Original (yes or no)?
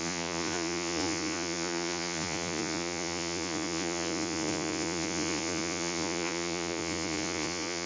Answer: no